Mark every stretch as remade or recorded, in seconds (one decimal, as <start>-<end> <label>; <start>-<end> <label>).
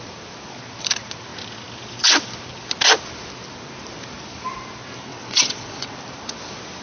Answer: 0.0-5.1 recorded; 5.1-6.0 remade; 6.0-6.8 recorded